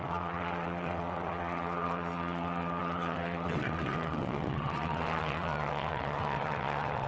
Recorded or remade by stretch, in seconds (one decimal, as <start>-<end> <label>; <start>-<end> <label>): 0.0-7.1 remade